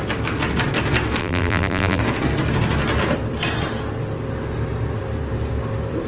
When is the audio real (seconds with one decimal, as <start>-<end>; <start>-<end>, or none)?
0.0-1.2; 2.0-6.1